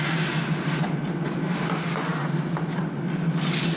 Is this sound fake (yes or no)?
no